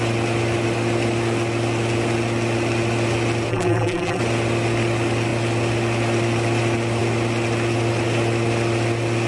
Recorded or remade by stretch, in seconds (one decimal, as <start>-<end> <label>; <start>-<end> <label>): 0.0-3.5 recorded; 3.5-4.2 remade; 4.2-9.3 recorded